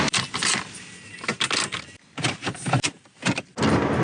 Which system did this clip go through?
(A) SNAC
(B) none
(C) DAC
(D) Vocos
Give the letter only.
B